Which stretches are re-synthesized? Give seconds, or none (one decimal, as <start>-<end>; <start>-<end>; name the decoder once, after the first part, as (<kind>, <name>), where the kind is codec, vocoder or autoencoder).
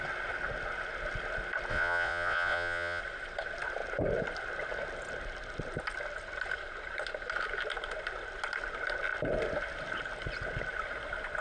1.7-3.0 (vocoder, Vocos)